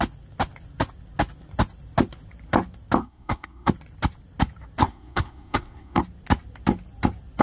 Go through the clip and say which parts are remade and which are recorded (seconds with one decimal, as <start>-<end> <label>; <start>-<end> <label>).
0.0-3.0 recorded; 3.0-3.7 remade; 3.7-4.8 recorded; 4.8-6.0 remade; 6.0-7.4 recorded